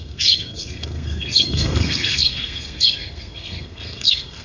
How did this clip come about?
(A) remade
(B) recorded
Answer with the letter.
A